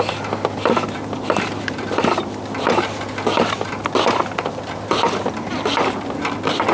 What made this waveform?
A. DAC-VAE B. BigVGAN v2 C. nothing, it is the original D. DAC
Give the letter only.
C